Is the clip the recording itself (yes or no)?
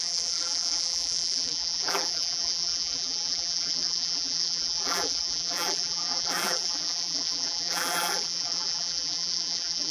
no